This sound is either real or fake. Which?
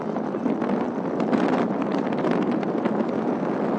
real